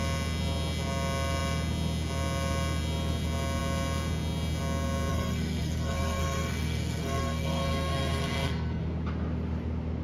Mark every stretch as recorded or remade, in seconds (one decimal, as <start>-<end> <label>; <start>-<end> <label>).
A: 0.0-5.1 recorded; 5.1-8.8 remade; 8.8-10.0 recorded